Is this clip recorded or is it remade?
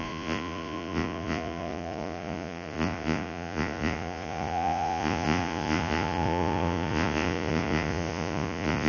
remade